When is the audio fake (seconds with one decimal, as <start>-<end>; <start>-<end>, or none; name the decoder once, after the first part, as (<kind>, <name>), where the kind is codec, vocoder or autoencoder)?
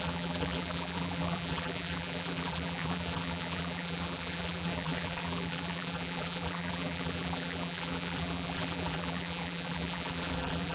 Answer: 0.0-10.7 (vocoder, BigVGAN v2)